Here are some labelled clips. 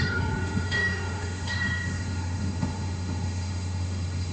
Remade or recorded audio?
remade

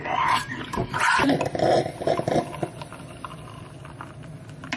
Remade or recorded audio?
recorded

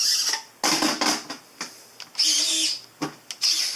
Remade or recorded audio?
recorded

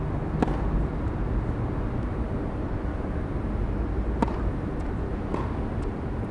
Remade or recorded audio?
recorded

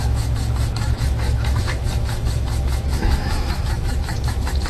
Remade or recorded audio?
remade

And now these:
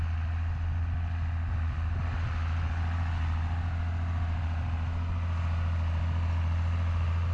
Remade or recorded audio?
recorded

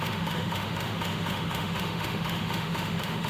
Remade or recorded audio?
remade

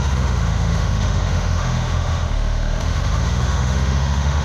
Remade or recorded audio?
remade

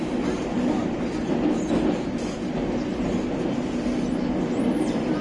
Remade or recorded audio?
recorded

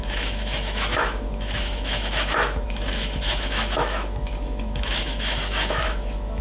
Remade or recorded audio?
remade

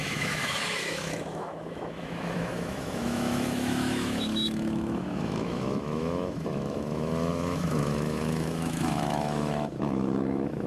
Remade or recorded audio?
remade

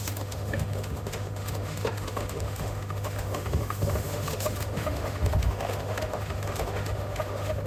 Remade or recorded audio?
remade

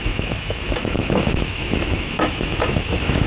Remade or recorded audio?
remade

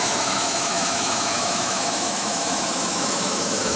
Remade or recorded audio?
remade